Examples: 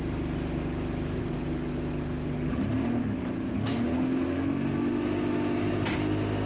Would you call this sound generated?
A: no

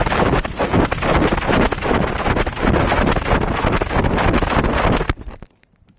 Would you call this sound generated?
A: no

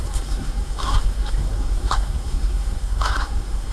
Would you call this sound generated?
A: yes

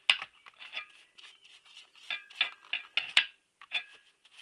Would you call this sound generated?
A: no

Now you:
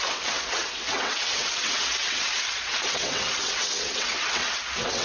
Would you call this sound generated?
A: yes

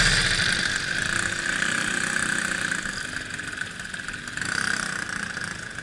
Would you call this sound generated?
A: no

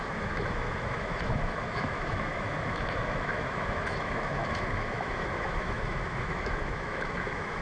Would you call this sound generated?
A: yes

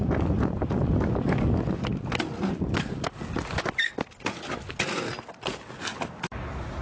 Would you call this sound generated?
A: no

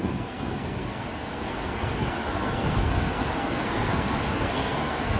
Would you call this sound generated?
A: yes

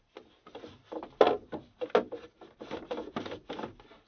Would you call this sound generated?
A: no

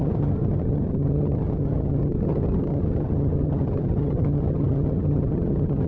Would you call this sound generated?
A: yes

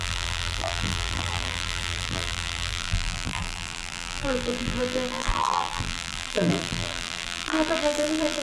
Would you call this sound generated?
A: yes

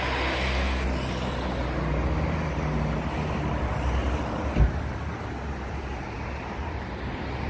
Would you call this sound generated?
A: no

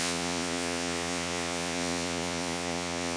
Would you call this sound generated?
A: yes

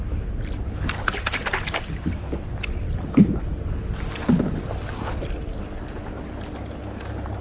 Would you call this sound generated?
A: no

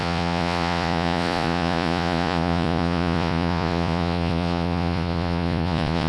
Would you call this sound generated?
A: yes